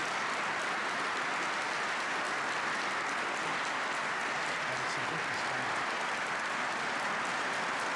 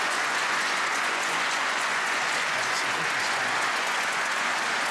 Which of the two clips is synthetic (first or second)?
second